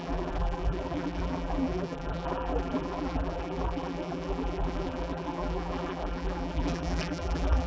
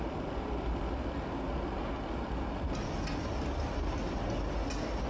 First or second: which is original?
second